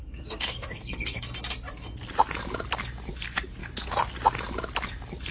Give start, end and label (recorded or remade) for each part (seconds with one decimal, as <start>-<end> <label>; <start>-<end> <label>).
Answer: 0.0-1.2 remade; 1.2-5.3 recorded

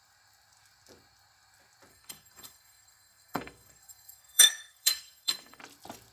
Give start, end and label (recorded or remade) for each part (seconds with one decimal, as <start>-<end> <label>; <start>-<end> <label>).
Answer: 0.0-1.9 recorded; 1.9-5.6 remade; 5.6-6.1 recorded

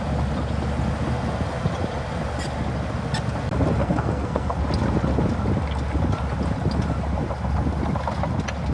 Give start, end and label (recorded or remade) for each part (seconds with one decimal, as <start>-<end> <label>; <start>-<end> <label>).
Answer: 0.0-3.8 recorded; 3.8-4.6 remade; 4.6-8.7 recorded

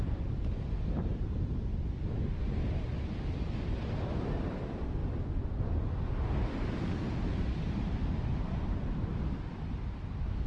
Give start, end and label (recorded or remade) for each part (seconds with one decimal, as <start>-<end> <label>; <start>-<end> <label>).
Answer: 0.0-10.5 recorded

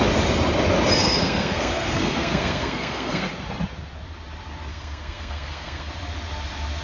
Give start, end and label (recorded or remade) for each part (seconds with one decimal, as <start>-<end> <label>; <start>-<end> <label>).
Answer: 0.0-1.0 recorded; 1.0-3.3 remade; 3.3-4.7 recorded; 4.7-5.9 remade; 5.9-6.8 recorded